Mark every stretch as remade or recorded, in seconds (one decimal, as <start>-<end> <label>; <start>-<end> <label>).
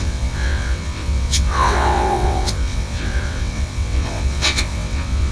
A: 0.0-5.3 remade